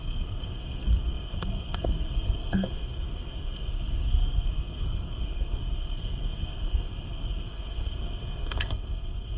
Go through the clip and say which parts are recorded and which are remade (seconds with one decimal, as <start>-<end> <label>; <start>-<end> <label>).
0.0-9.4 remade